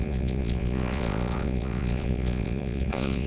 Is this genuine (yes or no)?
no